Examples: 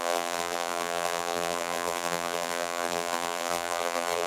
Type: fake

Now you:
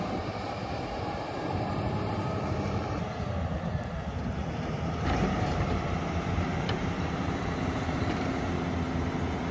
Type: fake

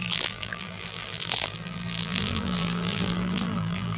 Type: fake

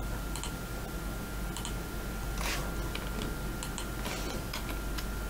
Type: real